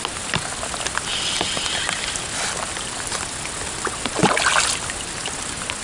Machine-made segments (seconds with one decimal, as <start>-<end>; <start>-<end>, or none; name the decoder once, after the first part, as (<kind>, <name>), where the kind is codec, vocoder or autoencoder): none